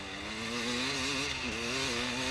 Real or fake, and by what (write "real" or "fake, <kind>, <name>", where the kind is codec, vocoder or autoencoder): real